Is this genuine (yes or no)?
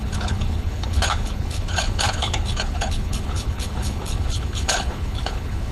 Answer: no